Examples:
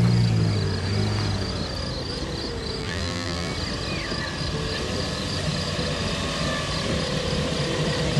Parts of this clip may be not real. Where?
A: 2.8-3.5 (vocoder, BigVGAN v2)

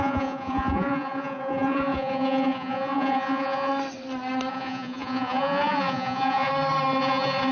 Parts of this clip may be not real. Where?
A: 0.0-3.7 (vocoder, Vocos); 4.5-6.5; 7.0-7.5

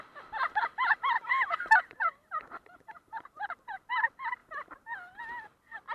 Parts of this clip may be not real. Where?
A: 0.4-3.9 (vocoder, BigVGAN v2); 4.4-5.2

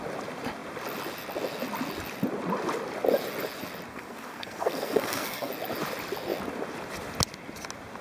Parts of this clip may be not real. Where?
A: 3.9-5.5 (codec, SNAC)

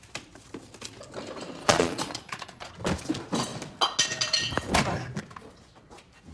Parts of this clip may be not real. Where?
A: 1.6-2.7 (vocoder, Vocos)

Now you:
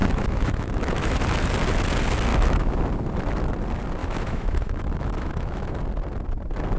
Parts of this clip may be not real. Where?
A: 0.0-1.2 (autoencoder, DAC-VAE); 2.3-2.8; 4.0-5.8